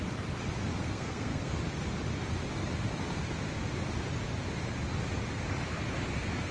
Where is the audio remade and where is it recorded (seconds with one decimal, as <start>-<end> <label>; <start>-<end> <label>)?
0.0-0.8 recorded; 0.8-1.6 remade; 1.6-6.5 recorded